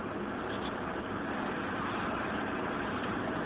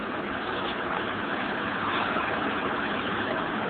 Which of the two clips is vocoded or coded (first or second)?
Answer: second